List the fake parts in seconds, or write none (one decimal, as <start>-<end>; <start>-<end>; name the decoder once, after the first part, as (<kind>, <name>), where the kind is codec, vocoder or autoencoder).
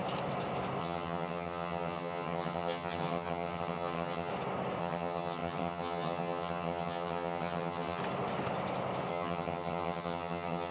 0.8-4.3 (vocoder, HiFi-GAN); 4.8-8.0; 9.1-10.7